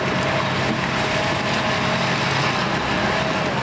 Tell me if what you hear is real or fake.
real